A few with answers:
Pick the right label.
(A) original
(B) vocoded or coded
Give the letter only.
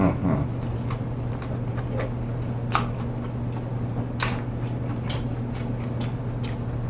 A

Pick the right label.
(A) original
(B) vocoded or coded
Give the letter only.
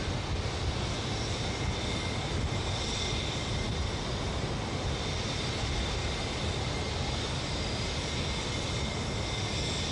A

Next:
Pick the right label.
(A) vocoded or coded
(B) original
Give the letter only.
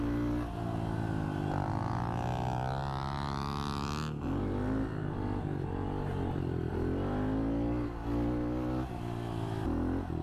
B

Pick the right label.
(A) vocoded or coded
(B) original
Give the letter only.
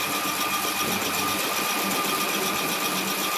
B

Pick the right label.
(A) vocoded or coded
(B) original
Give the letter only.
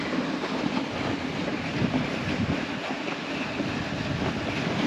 B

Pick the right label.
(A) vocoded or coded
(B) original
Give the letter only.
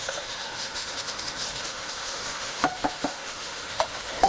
A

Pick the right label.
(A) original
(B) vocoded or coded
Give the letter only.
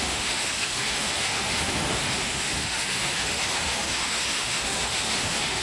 B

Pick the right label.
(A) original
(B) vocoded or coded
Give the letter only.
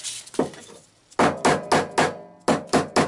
A